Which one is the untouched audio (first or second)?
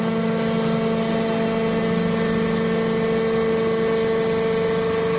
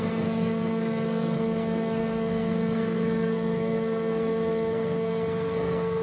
first